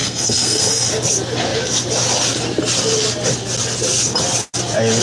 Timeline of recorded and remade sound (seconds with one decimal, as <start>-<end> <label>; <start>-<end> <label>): 0.0-0.9 remade; 0.9-5.0 recorded